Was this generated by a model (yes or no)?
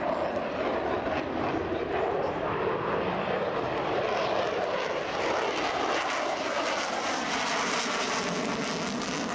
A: no